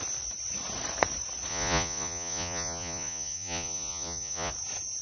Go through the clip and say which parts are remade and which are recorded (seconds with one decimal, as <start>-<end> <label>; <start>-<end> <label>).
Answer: 0.0-1.5 recorded; 1.5-4.5 remade; 4.5-5.0 recorded